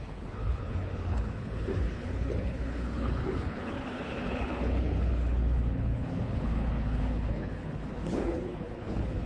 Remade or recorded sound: remade